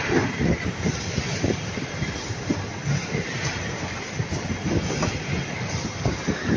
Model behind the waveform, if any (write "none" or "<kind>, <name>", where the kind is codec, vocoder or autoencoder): none